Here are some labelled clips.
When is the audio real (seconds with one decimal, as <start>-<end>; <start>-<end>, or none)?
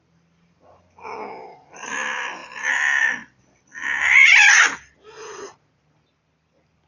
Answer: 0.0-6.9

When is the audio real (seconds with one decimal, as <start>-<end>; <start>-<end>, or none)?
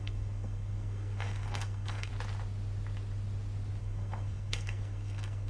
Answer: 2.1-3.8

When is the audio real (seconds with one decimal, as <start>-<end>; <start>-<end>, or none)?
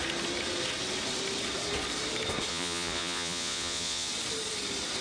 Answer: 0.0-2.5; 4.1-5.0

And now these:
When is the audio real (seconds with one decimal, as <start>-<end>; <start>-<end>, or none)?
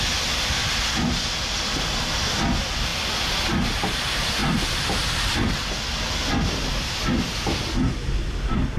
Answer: 0.0-0.6; 1.5-8.8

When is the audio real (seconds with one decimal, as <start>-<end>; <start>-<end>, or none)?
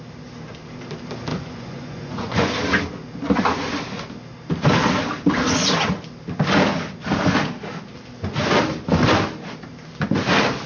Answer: 0.0-1.3; 2.5-10.7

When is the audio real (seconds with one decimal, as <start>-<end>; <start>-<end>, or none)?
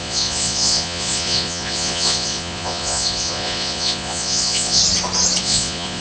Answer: 4.8-5.4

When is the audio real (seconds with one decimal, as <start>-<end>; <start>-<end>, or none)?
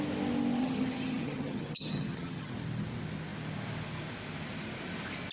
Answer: 0.0-0.6; 2.5-5.3